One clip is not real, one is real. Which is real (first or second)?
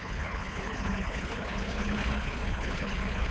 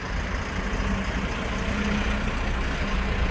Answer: second